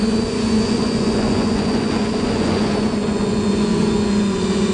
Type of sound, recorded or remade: remade